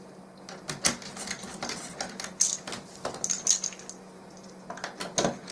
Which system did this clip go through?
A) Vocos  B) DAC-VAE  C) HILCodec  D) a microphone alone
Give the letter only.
D